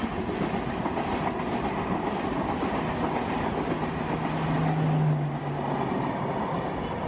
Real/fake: real